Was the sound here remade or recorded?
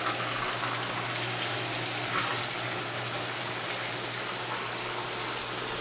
recorded